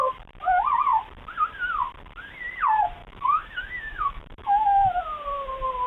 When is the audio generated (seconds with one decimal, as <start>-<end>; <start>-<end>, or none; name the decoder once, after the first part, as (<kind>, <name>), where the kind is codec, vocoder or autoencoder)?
3.0-5.0 (autoencoder, DAC-VAE)